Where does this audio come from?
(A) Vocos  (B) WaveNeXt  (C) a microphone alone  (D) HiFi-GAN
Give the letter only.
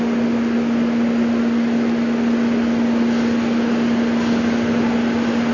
C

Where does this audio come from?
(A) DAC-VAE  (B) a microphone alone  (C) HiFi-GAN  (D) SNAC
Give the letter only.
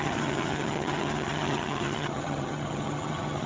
C